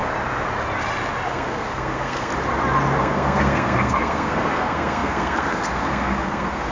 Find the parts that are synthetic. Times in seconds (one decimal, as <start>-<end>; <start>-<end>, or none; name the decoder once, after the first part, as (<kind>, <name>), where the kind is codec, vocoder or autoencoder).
1.3-2.3 (codec, SNAC); 3.0-6.7

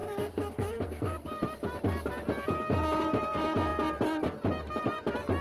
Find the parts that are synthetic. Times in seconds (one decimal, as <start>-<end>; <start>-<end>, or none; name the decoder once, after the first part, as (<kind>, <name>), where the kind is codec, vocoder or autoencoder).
0.0-1.3 (codec, SNAC)

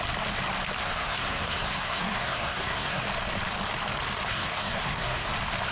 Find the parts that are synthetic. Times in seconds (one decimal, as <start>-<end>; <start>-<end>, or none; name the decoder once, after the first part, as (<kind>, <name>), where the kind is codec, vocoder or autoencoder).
0.8-3.0 (codec, SNAC); 4.3-5.3

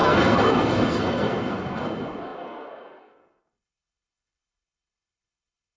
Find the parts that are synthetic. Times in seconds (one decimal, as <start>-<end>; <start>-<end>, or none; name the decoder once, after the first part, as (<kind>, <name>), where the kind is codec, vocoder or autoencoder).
0.0-5.8 (codec, SNAC)

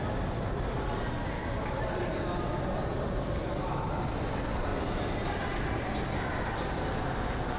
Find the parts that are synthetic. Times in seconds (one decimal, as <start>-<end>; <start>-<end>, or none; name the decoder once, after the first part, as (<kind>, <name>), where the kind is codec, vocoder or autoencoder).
none